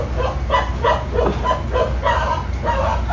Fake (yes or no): no